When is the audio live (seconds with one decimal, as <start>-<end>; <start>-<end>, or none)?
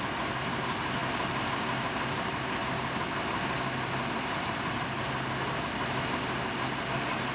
0.0-7.3